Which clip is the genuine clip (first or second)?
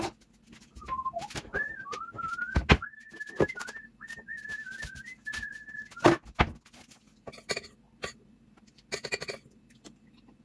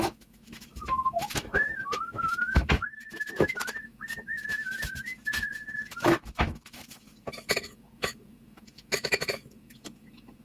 first